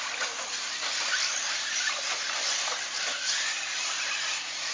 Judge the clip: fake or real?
real